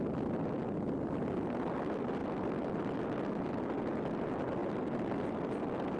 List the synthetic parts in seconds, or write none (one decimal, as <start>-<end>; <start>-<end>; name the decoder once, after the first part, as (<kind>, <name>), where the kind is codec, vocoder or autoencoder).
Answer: none